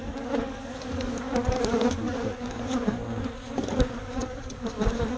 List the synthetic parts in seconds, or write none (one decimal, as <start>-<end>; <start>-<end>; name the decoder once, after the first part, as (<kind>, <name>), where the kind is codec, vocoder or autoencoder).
0.0-3.0 (codec, DAC); 3.6-5.2